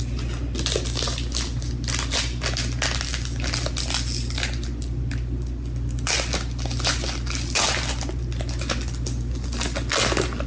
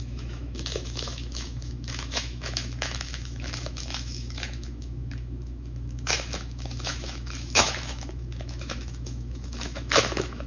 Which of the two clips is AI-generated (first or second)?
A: second